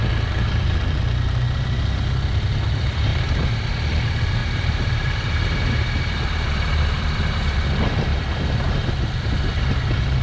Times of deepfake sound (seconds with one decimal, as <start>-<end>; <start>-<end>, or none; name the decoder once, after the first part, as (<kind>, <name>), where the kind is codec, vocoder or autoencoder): 3.1-3.7 (vocoder, BigVGAN v2); 4.4-7.2; 8.1-8.9